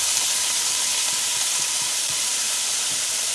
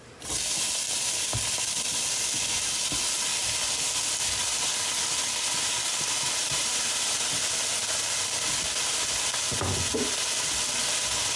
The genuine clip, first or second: second